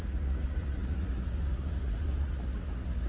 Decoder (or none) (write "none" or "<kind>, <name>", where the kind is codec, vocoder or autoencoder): vocoder, Vocos